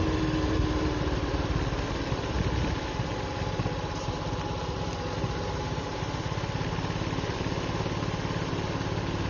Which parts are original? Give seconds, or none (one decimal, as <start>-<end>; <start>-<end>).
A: 0.0-9.3